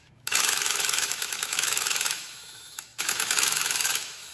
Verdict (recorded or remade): remade